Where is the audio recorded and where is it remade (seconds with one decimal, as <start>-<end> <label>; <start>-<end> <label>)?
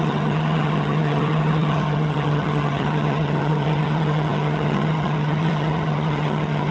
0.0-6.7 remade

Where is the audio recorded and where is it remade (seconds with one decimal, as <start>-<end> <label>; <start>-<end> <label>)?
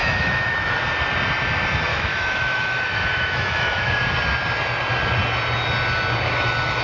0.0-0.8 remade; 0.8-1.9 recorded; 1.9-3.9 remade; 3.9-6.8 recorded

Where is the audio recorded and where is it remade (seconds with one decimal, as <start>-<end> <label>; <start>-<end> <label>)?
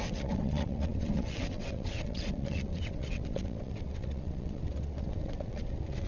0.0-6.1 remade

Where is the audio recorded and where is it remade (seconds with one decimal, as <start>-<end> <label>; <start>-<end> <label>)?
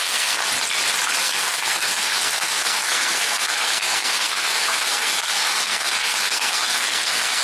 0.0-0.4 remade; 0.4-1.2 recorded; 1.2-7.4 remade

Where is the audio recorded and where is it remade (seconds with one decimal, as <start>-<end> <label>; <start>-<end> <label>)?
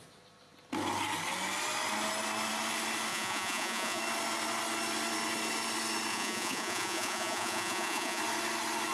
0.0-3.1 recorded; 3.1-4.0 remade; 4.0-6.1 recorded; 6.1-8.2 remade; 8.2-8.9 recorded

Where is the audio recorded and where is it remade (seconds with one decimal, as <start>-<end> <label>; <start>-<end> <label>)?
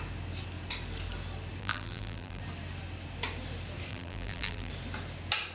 0.0-1.6 recorded; 1.6-2.4 remade; 2.4-3.9 recorded; 3.9-4.7 remade; 4.7-5.5 recorded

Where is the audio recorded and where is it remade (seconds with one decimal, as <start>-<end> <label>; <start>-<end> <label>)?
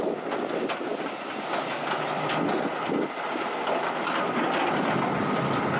0.0-5.8 recorded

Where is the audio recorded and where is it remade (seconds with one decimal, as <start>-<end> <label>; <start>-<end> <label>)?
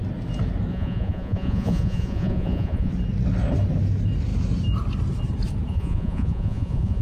0.0-0.7 recorded; 0.7-2.9 remade; 2.9-5.7 recorded; 5.7-7.0 remade